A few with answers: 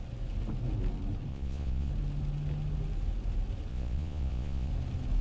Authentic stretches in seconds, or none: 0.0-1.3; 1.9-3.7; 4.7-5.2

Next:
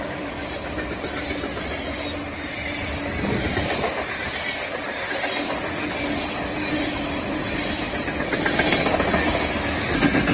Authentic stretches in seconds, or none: 0.0-10.3

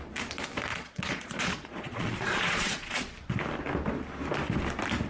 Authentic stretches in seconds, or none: 0.0-0.7; 3.0-5.1

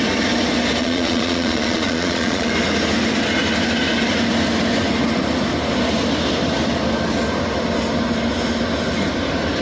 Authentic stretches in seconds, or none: 0.0-0.8; 2.5-9.6

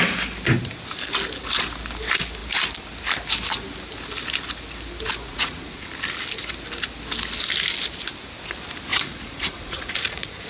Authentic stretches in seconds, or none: 0.0-5.3; 5.9-8.9

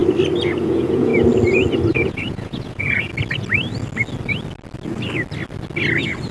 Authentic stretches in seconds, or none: 0.0-0.6; 1.1-1.9; 3.1-6.3

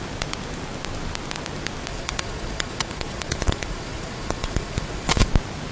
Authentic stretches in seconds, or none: 0.0-1.9; 5.3-5.7

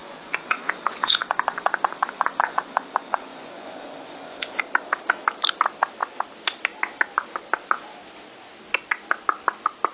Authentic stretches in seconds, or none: 4.6-9.9